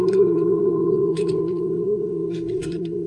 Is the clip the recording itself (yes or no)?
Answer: no